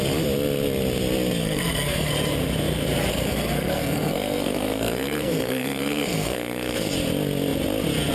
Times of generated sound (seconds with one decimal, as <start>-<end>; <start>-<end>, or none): 1.4-2.1; 3.1-6.9